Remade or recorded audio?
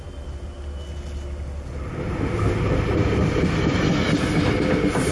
recorded